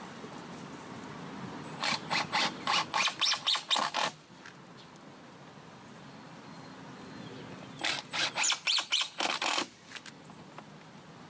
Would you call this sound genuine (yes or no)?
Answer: yes